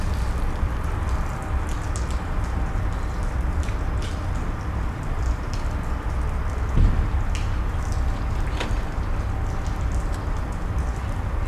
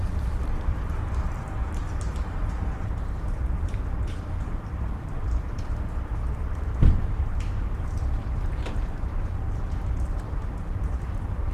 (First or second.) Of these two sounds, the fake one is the second